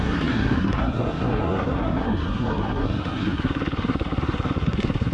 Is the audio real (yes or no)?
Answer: no